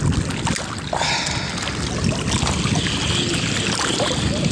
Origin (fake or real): real